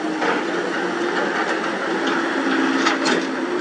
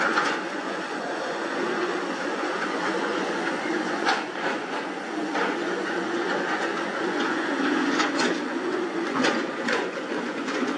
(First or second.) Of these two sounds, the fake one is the second